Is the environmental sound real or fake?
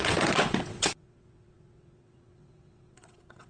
fake